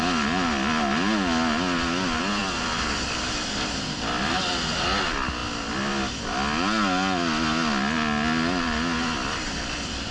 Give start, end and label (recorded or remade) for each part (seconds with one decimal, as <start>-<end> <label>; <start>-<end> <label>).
0.0-10.1 recorded